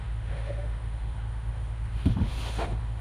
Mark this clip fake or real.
fake